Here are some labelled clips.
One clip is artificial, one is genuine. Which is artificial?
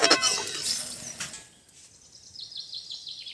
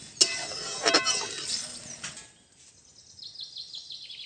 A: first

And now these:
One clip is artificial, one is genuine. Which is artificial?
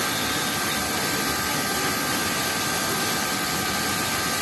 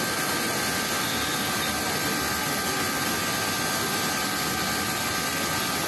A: first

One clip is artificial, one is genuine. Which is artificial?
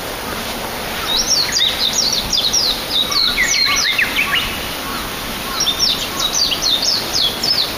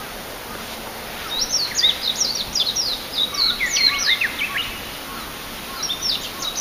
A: first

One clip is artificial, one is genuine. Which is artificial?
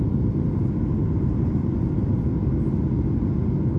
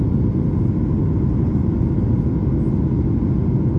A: first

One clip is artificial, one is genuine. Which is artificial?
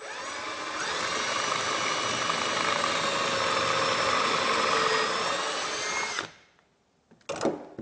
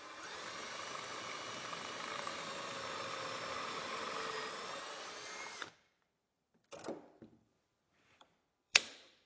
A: second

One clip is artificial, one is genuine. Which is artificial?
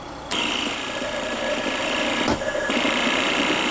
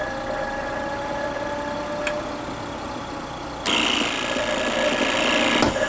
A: first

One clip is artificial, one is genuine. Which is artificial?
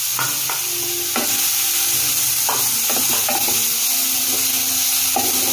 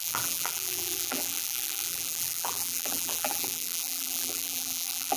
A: second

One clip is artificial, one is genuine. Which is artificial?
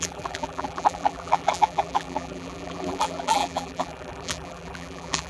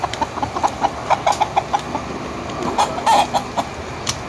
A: first